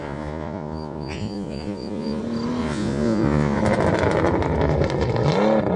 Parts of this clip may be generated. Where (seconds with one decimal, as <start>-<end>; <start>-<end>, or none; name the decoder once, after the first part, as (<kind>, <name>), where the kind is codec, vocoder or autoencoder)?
0.0-2.2 (vocoder, Vocos); 2.6-3.6

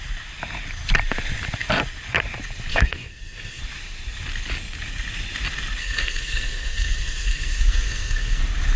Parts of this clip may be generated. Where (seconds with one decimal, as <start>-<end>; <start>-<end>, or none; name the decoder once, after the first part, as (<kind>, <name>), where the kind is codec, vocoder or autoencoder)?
2.7-3.6 (codec, SNAC); 5.8-8.4

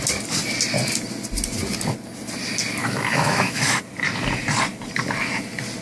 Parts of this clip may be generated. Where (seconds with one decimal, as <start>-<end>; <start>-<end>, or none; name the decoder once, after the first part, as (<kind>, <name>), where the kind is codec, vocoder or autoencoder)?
2.8-3.8 (autoencoder, DAC-VAE)

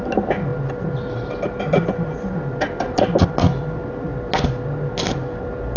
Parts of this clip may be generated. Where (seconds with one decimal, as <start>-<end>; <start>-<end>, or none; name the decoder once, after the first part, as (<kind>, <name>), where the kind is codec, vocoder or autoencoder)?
none